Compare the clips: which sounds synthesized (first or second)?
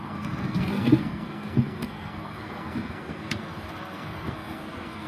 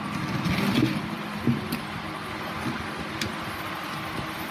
first